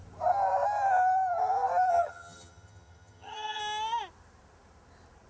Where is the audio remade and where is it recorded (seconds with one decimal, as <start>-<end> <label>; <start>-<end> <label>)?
0.0-1.9 recorded; 1.9-3.6 remade; 3.6-5.3 recorded